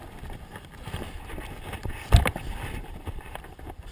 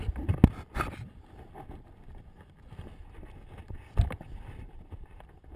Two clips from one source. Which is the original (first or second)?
second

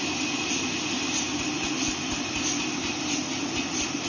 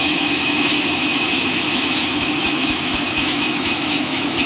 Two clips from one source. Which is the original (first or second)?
first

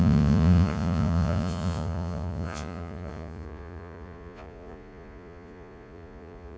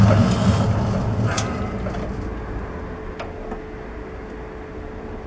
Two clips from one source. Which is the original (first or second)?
second